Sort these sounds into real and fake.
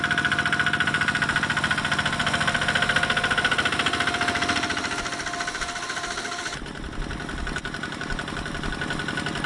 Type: real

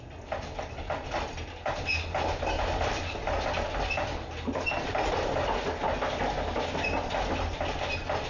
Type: real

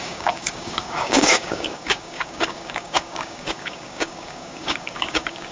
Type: fake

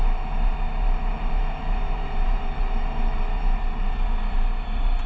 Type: fake